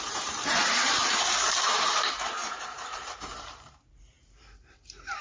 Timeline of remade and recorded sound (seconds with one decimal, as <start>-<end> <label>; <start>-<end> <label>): 0.0-5.2 remade